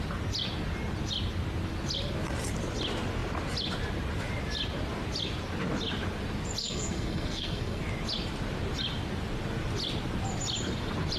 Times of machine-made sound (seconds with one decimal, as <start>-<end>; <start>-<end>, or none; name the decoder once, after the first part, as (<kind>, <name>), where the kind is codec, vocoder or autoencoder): 6.6-7.8 (codec, SNAC)